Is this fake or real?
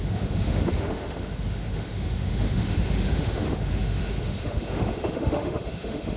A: fake